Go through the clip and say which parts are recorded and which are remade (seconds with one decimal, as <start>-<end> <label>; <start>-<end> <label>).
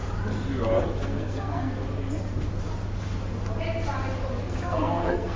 0.0-0.8 recorded; 0.8-1.8 remade; 1.8-4.4 recorded; 4.4-5.4 remade